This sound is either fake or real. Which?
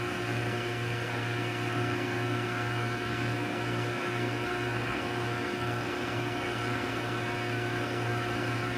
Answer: fake